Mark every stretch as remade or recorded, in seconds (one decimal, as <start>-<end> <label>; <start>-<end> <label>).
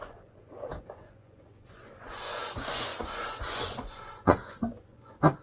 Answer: 0.0-5.4 remade